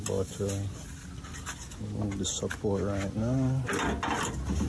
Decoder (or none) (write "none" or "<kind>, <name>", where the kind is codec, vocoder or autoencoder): none